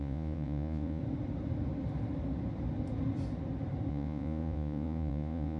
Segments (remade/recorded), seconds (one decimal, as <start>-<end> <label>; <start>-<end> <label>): 0.0-1.0 remade; 1.0-3.9 recorded; 3.9-5.6 remade